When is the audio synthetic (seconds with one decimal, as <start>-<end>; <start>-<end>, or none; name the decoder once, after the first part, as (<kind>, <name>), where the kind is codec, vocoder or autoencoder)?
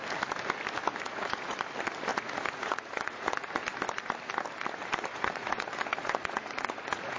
0.9-1.7 (vocoder, Vocos); 2.1-3.6; 5.1-7.2